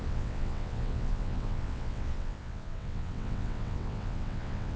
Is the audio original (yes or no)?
no